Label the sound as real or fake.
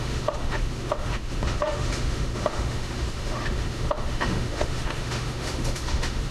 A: fake